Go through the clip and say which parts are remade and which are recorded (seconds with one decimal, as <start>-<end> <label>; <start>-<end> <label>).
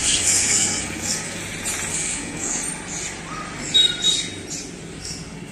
0.0-1.4 remade; 1.4-1.9 recorded; 1.9-2.6 remade; 2.6-5.0 recorded; 5.0-5.5 remade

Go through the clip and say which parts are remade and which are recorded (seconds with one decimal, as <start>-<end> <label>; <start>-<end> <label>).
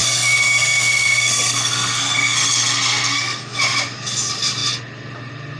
0.0-3.4 remade; 3.4-5.6 recorded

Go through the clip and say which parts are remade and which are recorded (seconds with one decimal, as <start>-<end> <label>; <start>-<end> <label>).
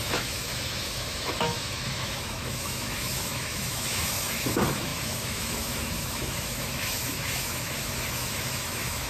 0.0-9.1 remade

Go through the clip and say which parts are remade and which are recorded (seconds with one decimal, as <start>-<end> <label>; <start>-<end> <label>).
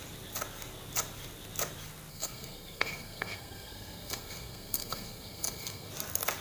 0.0-2.1 recorded; 2.1-5.9 remade; 5.9-6.4 recorded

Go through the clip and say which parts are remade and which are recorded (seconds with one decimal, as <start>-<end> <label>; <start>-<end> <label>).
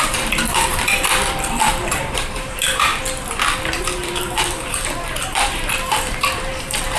0.0-2.9 remade; 2.9-3.8 recorded; 3.8-7.0 remade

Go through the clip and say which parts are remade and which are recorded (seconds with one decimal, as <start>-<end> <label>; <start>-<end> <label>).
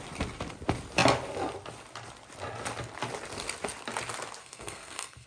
0.0-4.4 recorded; 4.4-5.3 remade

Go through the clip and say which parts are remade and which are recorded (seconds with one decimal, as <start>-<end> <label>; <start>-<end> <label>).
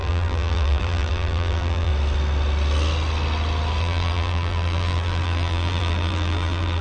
0.0-1.9 remade; 1.9-3.8 recorded; 3.8-6.8 remade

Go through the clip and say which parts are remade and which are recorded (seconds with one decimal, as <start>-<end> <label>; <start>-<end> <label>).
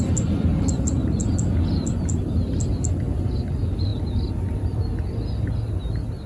0.0-6.3 recorded